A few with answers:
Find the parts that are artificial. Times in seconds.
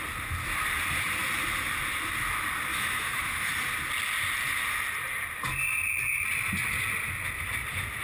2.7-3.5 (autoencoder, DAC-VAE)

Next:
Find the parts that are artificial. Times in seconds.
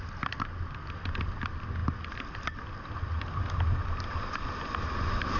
none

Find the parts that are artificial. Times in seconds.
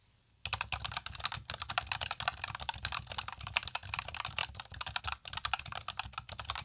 none